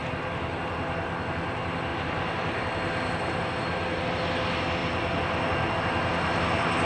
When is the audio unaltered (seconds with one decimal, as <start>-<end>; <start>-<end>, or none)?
0.0-6.9